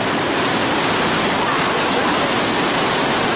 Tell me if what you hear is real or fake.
real